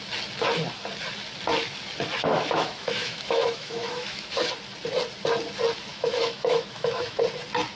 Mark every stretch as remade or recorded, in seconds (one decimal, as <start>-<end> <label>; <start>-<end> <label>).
0.0-2.3 recorded; 2.3-4.4 remade; 4.4-5.9 recorded; 5.9-7.2 remade; 7.2-7.8 recorded